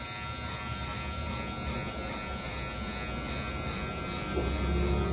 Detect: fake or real real